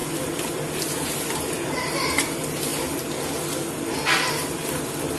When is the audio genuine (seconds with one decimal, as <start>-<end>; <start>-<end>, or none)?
0.0-5.2